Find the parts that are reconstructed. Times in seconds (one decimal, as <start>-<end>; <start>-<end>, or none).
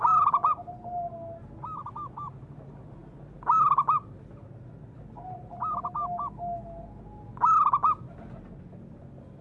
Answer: none